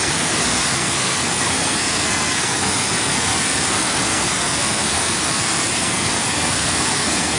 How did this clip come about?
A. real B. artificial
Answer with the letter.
B